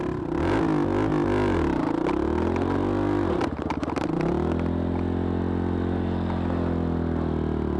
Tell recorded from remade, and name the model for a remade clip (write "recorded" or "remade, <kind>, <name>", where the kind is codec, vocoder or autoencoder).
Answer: recorded